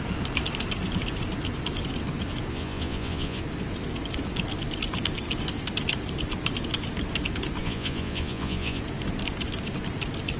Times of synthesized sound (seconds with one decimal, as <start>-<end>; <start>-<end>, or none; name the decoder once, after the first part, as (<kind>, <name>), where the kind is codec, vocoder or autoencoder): 2.5-3.4 (vocoder, Vocos); 7.6-8.8